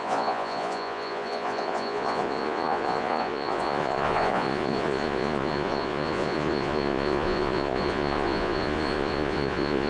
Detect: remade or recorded remade